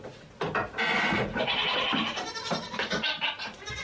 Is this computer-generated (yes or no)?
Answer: no